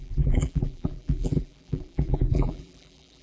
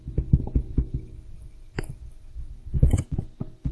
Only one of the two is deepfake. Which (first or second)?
first